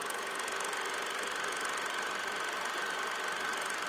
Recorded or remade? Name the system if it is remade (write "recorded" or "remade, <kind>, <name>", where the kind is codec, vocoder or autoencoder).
recorded